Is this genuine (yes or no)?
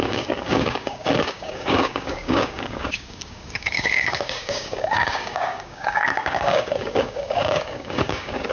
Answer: no